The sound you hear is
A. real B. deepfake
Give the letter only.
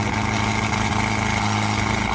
A